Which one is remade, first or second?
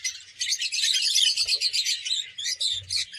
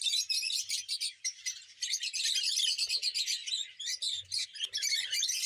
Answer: second